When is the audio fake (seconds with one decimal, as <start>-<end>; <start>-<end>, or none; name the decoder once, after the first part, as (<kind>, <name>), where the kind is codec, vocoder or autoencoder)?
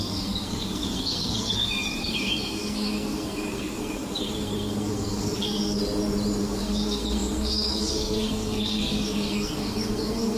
0.0-5.8 (codec, SNAC); 6.4-10.4